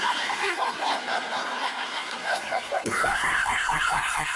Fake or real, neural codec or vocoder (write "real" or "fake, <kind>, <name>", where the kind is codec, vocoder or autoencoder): fake, codec, SNAC